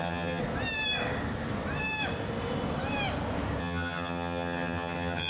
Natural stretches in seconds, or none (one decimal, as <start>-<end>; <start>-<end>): 0.4-3.6